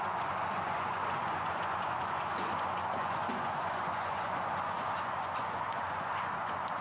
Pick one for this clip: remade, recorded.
remade